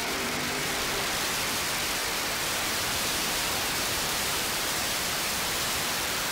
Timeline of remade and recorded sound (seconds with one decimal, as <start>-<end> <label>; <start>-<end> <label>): 0.0-0.7 remade; 0.7-2.0 recorded; 2.0-5.3 remade; 5.3-6.3 recorded